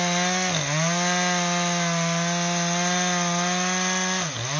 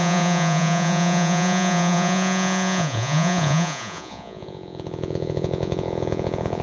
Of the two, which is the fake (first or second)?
second